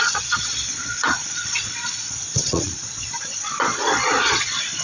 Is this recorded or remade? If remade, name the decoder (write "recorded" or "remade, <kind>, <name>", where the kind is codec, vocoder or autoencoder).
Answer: remade, vocoder, Vocos